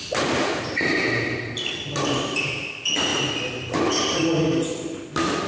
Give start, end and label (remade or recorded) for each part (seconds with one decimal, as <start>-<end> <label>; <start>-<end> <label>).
0.0-5.5 recorded